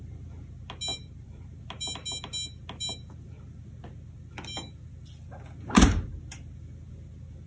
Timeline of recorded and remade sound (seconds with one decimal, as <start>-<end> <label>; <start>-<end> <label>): 0.0-0.9 recorded; 0.9-1.6 remade; 1.6-7.5 recorded